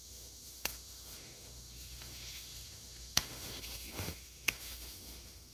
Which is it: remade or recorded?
remade